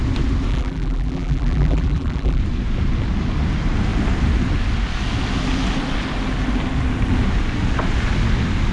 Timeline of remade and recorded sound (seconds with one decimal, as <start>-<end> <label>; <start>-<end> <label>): 0.0-0.5 recorded; 0.5-2.4 remade; 2.4-8.7 recorded